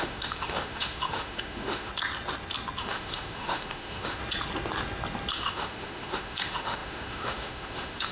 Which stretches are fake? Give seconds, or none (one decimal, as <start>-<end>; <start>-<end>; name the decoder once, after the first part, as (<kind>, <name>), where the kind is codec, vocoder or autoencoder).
0.0-1.9 (autoencoder, DAC-VAE); 2.8-4.2; 5.3-8.1